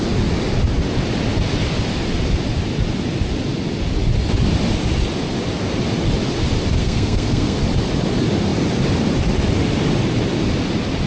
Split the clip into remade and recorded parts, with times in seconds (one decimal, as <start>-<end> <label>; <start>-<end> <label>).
0.0-6.8 recorded; 6.8-7.6 remade; 7.6-11.1 recorded